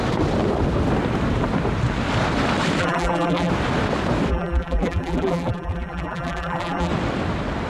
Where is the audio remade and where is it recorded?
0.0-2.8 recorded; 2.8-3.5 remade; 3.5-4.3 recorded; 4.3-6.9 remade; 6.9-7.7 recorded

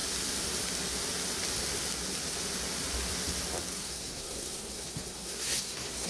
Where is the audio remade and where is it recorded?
0.0-3.8 recorded; 3.8-6.1 remade

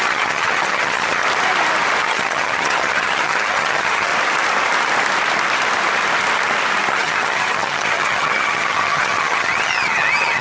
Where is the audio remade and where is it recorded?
0.0-1.2 remade; 1.2-2.0 recorded; 2.0-4.1 remade; 4.1-6.9 recorded; 6.9-10.4 remade

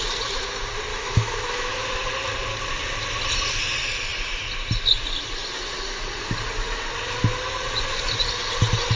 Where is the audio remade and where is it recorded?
0.0-0.9 recorded; 0.9-1.8 remade; 1.8-9.0 recorded

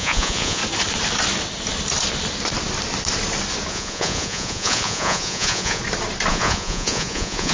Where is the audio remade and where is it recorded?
0.0-0.6 remade; 0.6-3.7 recorded; 3.7-5.8 remade; 5.8-6.3 recorded; 6.3-7.5 remade